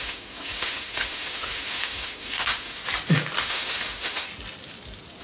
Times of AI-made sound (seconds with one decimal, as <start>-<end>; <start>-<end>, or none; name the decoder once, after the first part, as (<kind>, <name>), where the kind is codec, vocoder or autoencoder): 0.0-2.8 (autoencoder, DAC-VAE); 3.4-4.3